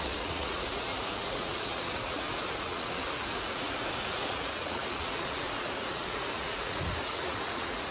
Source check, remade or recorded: remade